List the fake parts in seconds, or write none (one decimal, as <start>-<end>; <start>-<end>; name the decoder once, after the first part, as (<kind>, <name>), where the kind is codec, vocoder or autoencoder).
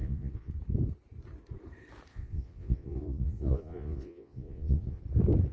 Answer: 0.0-0.5 (vocoder, Vocos); 2.1-5.0